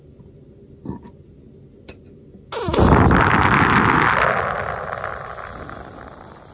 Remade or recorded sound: recorded